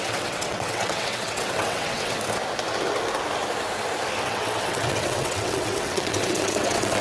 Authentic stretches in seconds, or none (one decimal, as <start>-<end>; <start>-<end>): 2.1-4.2